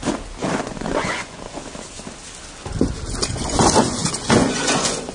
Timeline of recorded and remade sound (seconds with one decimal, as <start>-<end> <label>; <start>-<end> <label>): 0.0-0.6 recorded; 0.6-1.6 remade; 1.6-3.3 recorded; 3.3-5.1 remade